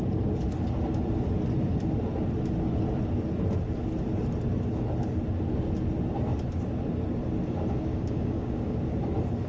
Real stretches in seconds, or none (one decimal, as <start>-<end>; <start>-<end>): 0.0-7.9; 8.8-9.5